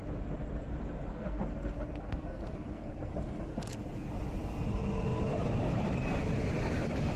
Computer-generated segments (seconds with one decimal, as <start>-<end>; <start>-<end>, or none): 1.1-3.1; 3.5-4.1